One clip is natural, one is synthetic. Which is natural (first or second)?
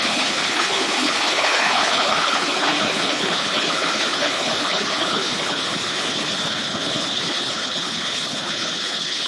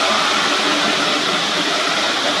second